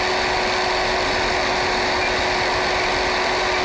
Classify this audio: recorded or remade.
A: recorded